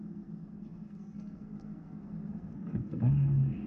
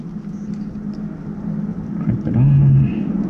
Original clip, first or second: second